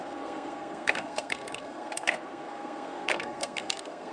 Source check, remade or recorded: remade